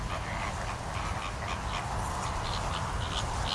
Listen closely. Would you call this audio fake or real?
real